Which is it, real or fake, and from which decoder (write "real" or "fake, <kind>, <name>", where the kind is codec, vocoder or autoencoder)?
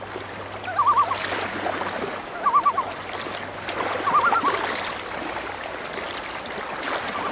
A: real